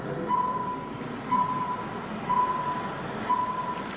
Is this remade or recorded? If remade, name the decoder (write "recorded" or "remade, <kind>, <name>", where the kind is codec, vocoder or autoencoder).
recorded